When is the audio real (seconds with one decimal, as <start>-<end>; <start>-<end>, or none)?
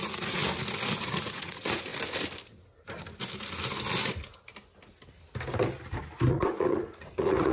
0.4-1.0; 1.9-6.3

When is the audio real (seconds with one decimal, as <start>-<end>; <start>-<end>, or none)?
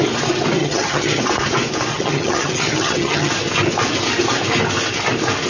0.0-0.6; 1.2-1.9; 3.3-5.5